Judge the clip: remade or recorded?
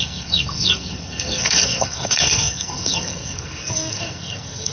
remade